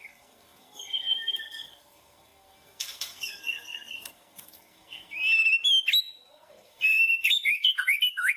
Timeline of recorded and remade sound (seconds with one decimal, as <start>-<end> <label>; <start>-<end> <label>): 0.0-5.2 remade; 5.2-6.3 recorded; 6.3-8.4 remade